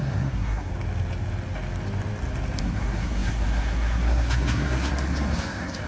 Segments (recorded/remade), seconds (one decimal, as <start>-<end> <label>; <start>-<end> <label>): 0.0-0.7 remade; 0.7-2.6 recorded; 2.6-5.9 remade